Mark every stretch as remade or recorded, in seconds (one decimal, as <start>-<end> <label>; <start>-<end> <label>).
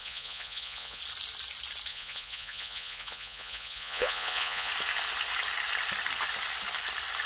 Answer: 0.0-1.0 remade; 1.0-1.9 recorded; 1.9-4.7 remade; 4.7-7.3 recorded